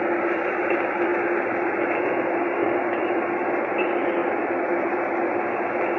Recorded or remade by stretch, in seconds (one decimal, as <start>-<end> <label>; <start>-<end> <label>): 0.0-6.0 recorded